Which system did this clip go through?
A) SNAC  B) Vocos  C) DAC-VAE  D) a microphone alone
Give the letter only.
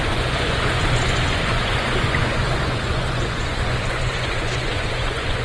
B